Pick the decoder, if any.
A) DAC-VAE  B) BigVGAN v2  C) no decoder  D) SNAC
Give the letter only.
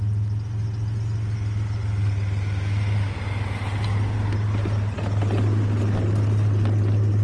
C